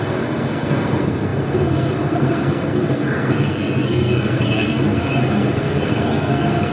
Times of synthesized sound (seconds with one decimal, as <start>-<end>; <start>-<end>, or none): 0.0-6.7